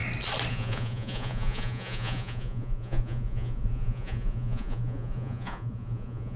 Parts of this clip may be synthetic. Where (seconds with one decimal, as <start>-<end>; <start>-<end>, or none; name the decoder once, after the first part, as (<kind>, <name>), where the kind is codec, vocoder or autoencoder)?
0.5-6.4 (vocoder, Vocos)